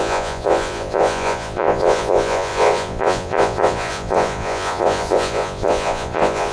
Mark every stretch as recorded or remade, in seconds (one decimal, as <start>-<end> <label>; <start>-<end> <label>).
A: 0.0-6.5 remade